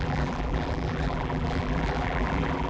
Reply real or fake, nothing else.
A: fake